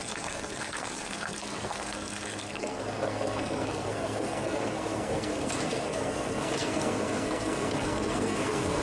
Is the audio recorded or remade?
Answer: remade